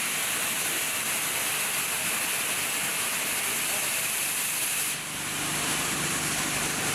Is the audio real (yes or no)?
yes